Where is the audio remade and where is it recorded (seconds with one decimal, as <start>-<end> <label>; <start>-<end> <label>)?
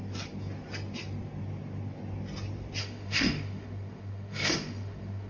0.0-2.8 recorded; 2.8-5.3 remade